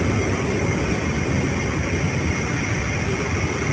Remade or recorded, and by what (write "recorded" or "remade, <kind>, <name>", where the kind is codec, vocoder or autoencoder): recorded